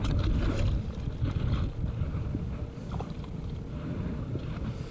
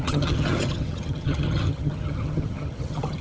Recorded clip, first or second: first